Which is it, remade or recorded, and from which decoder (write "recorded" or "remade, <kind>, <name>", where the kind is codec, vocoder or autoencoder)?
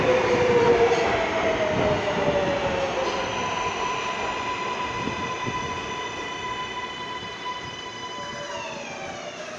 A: recorded